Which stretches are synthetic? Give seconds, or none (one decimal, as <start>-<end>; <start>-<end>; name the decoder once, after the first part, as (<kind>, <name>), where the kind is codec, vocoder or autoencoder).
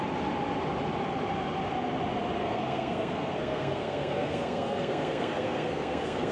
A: 2.4-6.3 (codec, SNAC)